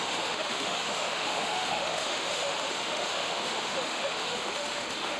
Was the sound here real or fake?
fake